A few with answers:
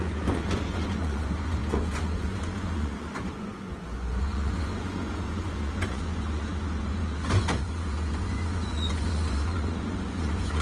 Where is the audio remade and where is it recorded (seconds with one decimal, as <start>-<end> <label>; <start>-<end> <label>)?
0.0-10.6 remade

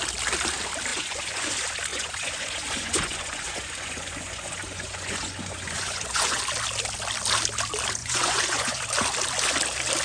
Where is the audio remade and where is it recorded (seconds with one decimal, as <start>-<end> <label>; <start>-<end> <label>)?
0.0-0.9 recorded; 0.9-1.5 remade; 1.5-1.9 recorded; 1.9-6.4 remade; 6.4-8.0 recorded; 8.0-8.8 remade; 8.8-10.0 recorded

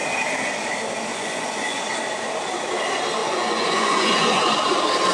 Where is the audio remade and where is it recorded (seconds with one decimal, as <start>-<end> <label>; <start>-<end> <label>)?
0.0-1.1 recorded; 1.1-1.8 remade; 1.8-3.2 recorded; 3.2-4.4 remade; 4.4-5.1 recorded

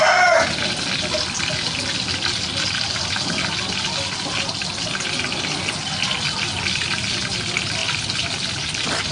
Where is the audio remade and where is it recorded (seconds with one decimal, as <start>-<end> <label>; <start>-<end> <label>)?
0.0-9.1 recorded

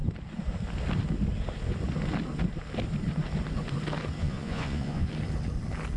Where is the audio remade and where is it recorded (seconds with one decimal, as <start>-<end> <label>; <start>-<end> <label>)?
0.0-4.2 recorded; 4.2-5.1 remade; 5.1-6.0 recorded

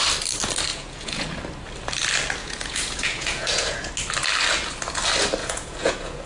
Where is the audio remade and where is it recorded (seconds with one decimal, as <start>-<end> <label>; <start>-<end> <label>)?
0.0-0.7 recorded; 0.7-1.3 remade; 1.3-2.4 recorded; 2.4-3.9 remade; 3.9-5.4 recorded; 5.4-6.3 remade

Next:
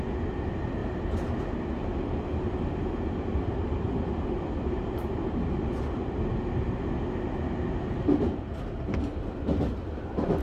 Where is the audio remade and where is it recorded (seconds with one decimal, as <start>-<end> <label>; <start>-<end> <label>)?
0.0-10.4 recorded

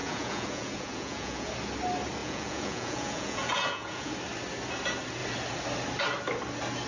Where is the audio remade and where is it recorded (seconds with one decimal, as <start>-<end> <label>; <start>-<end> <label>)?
0.0-1.5 remade; 1.5-2.2 recorded; 2.2-4.1 remade; 4.1-6.9 recorded